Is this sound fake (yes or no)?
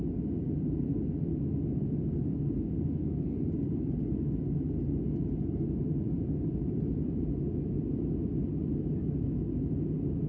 no